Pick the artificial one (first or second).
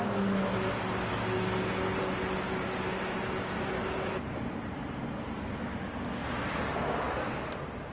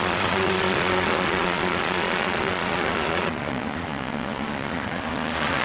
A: second